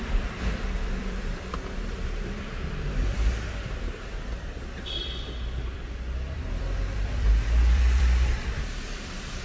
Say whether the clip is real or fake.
fake